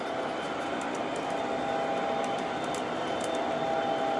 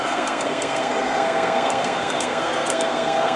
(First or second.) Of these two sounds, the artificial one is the second